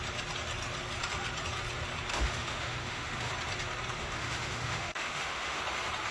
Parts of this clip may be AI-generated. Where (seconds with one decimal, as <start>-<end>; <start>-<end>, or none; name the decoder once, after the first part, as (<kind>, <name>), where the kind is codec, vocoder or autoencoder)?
2.1-3.3 (autoencoder, DAC-VAE); 4.0-5.6